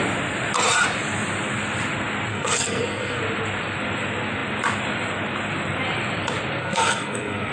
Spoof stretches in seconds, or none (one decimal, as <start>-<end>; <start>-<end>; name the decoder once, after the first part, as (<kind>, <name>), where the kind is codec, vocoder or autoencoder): 2.3-3.2 (codec, SNAC); 6.6-7.5